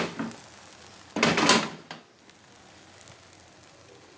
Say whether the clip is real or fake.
real